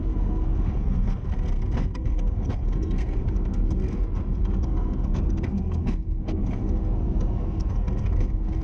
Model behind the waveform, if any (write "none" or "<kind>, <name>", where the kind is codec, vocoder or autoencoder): codec, SNAC